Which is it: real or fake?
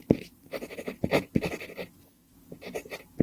real